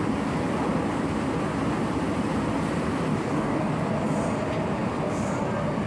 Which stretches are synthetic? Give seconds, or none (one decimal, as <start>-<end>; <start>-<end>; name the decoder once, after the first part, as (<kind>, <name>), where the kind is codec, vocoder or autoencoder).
3.1-3.7 (codec, DAC)